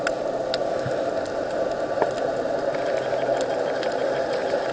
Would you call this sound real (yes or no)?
yes